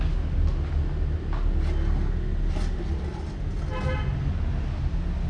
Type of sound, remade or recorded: recorded